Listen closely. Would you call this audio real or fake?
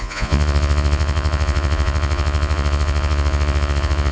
fake